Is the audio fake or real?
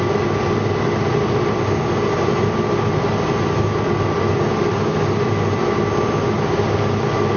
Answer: real